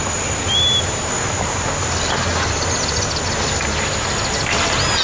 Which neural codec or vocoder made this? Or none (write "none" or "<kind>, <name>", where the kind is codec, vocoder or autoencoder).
none